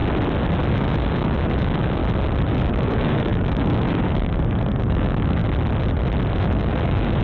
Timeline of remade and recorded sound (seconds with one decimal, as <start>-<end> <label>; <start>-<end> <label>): 0.0-0.7 recorded; 0.7-2.0 remade; 2.0-2.5 recorded; 2.5-5.4 remade; 5.4-6.3 recorded; 6.3-7.2 remade